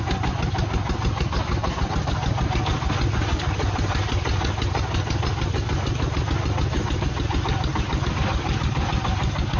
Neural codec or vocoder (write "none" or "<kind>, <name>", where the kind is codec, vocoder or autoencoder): none